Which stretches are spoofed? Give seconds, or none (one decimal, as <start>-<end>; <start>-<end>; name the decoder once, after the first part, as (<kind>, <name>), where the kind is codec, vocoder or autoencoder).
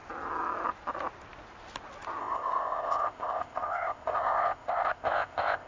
2.2-5.7 (codec, ZipCodec)